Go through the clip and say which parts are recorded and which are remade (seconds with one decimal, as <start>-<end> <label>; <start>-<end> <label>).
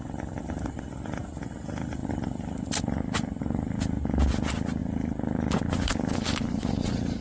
0.0-7.2 recorded